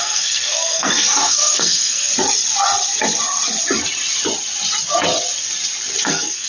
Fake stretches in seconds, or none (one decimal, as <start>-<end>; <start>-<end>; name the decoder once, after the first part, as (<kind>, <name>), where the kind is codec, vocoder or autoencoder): 0.0-2.1 (codec, SNAC); 6.0-6.5